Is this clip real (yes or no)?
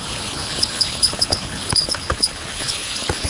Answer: no